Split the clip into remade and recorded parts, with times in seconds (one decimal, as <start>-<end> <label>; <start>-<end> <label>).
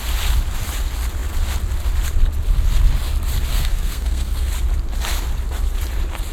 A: 0.0-3.5 recorded; 3.5-4.5 remade; 4.5-6.3 recorded